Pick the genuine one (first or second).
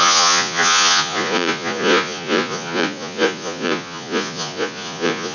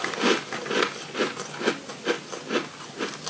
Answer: second